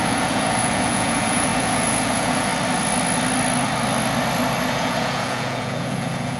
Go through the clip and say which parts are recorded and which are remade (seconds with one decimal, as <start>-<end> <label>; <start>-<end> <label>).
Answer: 0.0-2.5 remade; 2.5-4.7 recorded; 4.7-6.4 remade